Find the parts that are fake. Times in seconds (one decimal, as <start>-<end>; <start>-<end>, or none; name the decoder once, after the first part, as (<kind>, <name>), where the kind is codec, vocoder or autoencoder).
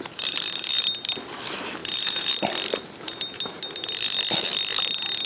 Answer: none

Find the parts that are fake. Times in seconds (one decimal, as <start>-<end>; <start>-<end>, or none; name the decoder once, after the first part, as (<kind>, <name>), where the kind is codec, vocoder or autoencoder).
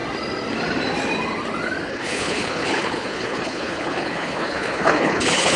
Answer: 1.9-5.6 (codec, HILCodec)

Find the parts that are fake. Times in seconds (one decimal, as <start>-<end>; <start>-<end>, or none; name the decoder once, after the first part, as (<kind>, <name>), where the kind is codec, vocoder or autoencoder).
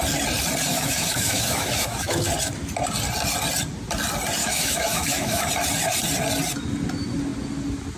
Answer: 0.7-2.2 (autoencoder, DAC-VAE); 4.4-5.5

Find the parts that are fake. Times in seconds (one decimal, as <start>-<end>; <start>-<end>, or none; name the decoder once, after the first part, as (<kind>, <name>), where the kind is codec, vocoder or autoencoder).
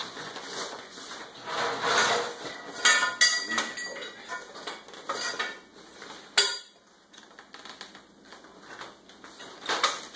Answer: 0.0-1.2 (vocoder, Vocos)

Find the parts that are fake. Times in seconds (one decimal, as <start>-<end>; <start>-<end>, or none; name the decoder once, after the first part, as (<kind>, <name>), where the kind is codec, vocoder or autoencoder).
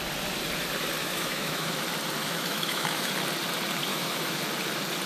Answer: 1.0-1.7 (autoencoder, DAC-VAE); 2.2-3.1; 3.9-4.4